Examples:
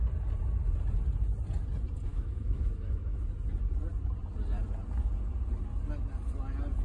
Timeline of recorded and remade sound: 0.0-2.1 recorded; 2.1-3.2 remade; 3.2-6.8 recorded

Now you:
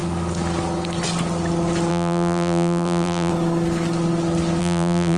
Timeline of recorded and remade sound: 0.0-1.9 recorded; 1.9-3.3 remade; 3.3-4.6 recorded; 4.6-5.2 remade

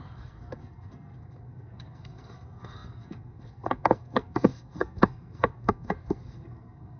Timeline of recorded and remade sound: 0.0-7.0 remade

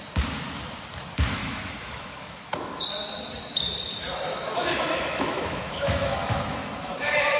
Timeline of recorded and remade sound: 0.0-1.4 recorded; 1.4-2.8 remade; 2.8-4.3 recorded; 4.3-7.4 remade